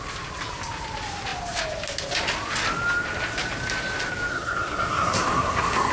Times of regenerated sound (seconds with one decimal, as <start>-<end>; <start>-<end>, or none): 4.3-5.9